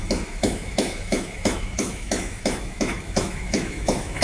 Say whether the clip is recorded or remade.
remade